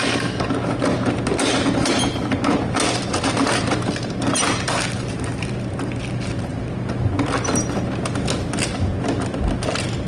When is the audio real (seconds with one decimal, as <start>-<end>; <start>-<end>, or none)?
0.0-6.5; 7.1-10.1